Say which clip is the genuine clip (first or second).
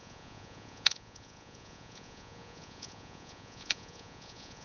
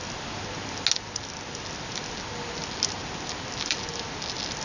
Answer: second